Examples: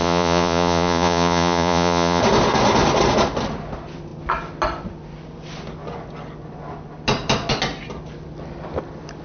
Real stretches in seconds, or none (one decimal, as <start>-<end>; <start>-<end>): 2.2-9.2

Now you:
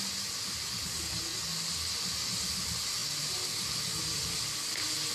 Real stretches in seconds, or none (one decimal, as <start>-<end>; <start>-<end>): 0.0-5.1

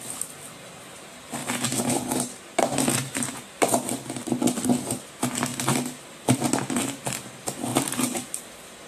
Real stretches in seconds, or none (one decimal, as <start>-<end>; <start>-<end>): 0.0-5.5; 6.4-7.7; 8.3-8.9

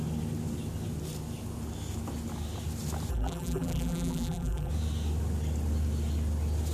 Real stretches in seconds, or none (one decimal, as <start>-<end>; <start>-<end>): 0.0-3.1; 4.7-6.7

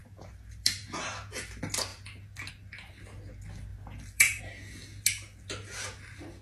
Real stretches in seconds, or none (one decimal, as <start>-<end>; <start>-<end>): 1.4-3.7; 4.4-6.4

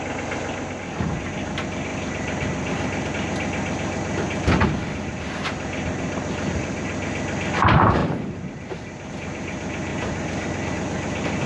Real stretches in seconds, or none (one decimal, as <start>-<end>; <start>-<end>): 0.0-8.0; 9.1-9.9; 10.7-11.5